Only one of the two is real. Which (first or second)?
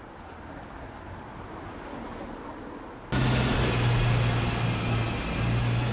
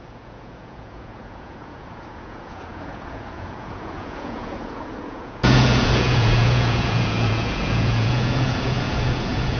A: first